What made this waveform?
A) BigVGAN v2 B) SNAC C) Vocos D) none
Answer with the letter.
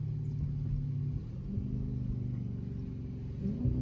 D